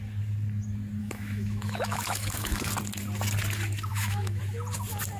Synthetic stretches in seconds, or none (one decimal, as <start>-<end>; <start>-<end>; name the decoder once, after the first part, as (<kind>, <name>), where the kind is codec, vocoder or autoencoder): 1.0-2.7 (autoencoder, DAC-VAE); 3.9-4.4